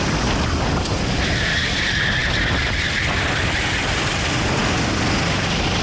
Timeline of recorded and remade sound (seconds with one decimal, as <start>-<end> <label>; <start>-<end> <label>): 0.0-2.2 recorded; 2.2-4.6 remade; 4.6-5.8 recorded